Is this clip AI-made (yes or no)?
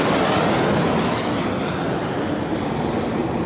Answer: no